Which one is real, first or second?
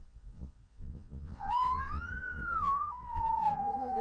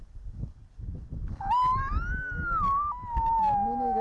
second